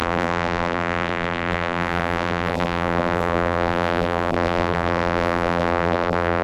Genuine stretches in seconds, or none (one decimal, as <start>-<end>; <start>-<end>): none